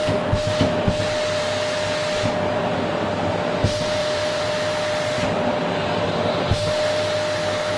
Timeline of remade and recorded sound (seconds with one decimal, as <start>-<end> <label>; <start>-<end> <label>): 0.0-4.0 recorded; 4.0-5.6 remade; 5.6-7.8 recorded